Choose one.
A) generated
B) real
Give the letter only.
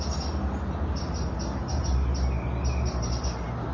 B